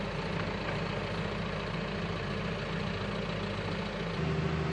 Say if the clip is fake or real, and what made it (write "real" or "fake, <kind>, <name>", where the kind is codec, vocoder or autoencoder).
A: real